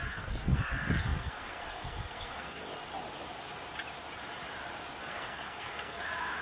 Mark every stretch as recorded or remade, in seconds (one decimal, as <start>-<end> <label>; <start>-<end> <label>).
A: 0.0-2.6 remade; 2.6-5.0 recorded; 5.0-6.4 remade

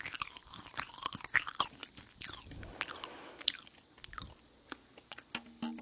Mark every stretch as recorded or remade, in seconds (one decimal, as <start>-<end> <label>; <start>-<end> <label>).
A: 0.0-5.8 recorded